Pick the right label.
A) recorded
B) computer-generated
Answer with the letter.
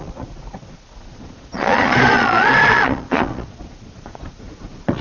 B